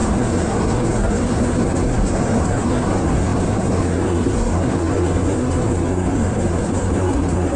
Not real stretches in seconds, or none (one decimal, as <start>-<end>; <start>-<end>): 0.0-7.6

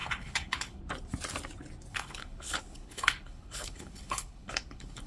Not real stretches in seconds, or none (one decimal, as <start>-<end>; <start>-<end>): 0.0-0.8; 1.9-5.1

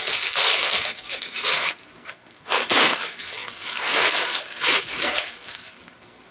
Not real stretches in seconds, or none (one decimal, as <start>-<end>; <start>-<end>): 0.0-6.3

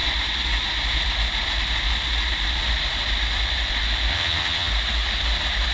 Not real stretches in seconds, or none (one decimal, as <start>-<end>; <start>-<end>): 4.1-4.7

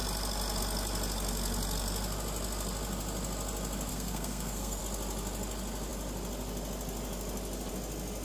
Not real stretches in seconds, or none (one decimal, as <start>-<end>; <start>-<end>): 3.9-4.8